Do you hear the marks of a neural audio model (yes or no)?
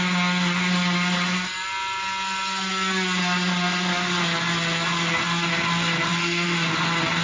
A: no